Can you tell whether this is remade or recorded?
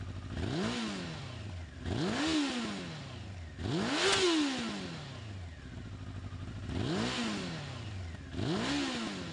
recorded